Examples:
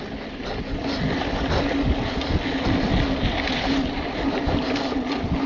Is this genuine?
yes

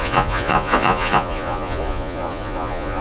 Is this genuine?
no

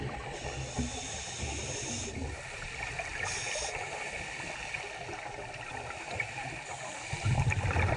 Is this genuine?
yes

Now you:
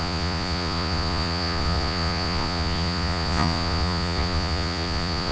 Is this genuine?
no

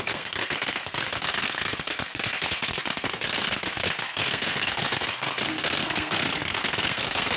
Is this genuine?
no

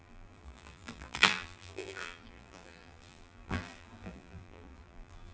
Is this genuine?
no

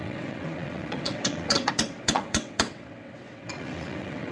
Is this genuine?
no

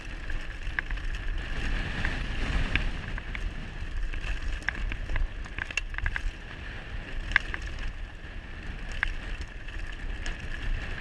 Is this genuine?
yes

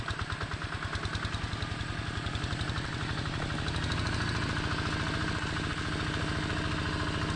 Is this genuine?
yes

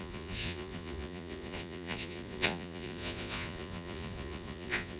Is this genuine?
no